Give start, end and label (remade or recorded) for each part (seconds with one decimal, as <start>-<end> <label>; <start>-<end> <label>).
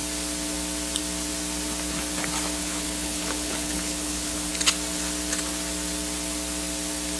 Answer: 0.0-2.6 recorded; 2.6-4.5 remade; 4.5-7.2 recorded